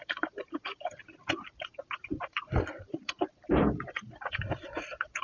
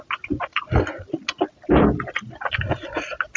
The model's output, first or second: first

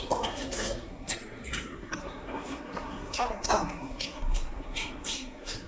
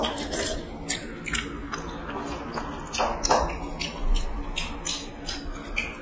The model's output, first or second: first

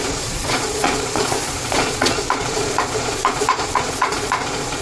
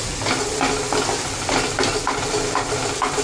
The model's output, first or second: first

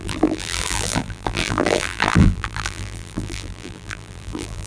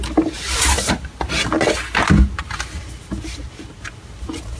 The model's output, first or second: first